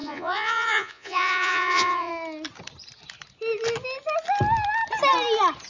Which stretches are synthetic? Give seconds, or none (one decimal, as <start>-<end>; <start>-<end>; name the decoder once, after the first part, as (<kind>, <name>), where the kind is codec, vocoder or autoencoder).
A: 0.0-2.1 (vocoder, Vocos)